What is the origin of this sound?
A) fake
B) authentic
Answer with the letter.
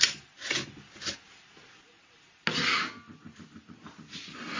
B